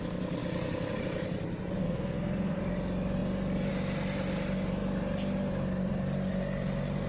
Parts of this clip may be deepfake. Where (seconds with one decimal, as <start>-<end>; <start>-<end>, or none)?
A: 1.8-2.6